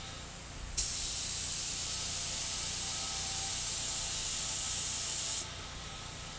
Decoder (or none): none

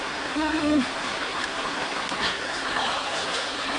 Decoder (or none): codec, SNAC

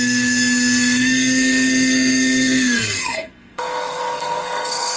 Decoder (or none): codec, SNAC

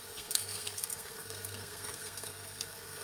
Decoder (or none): codec, SNAC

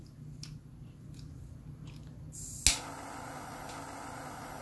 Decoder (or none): none